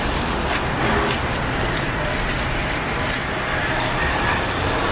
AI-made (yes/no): no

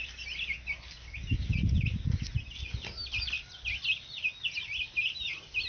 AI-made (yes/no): no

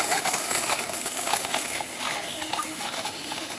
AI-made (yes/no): yes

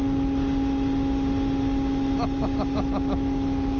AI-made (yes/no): no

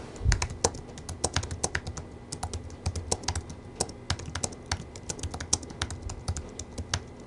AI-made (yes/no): no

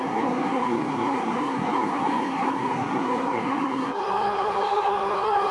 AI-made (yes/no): yes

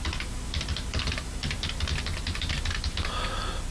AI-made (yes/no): no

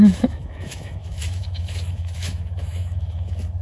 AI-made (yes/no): yes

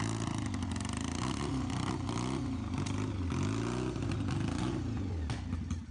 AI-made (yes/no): no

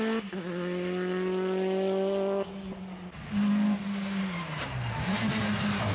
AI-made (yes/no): no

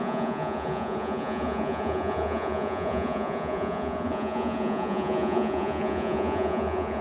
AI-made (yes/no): yes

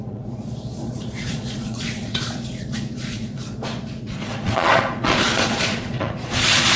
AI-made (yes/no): yes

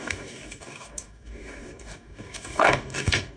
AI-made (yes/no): yes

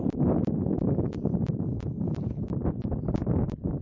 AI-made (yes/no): no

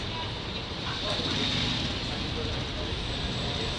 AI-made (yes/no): no